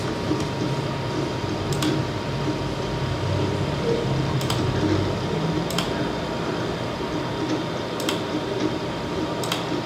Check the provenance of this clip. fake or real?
real